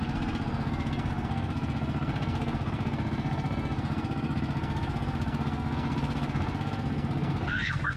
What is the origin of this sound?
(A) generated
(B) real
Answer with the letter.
A